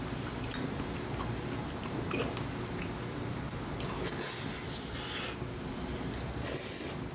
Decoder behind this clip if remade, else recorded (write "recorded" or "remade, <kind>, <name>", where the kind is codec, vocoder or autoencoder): recorded